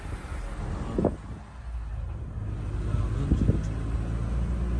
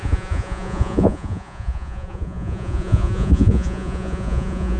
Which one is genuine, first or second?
first